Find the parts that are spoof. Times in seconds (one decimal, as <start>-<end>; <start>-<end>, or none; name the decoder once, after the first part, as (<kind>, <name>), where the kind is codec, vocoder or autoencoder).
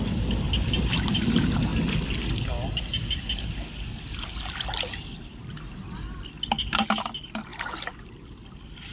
none